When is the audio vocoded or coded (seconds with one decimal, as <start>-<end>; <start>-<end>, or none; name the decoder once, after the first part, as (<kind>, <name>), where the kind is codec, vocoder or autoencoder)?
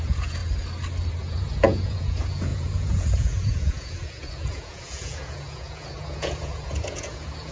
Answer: 0.0-0.4 (vocoder, Vocos); 1.1-7.5